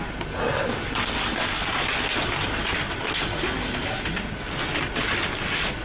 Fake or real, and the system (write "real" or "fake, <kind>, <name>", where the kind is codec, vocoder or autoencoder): real